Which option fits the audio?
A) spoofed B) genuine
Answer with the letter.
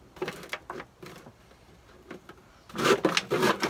B